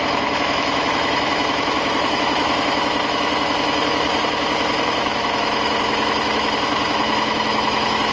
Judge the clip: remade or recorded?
remade